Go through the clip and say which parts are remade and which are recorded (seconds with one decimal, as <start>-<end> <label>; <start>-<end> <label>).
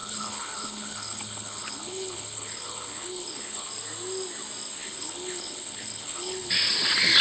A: 0.0-3.7 remade; 3.7-4.8 recorded; 4.8-6.5 remade; 6.5-7.2 recorded